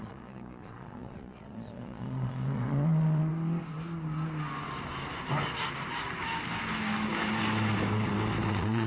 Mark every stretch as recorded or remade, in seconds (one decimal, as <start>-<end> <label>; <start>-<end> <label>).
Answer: 0.0-3.3 remade; 3.3-8.5 recorded; 8.5-8.9 remade